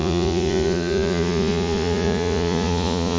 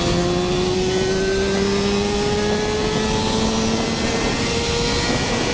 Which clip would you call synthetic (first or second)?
first